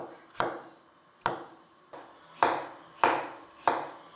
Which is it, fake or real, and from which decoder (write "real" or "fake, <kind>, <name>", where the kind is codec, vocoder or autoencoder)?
real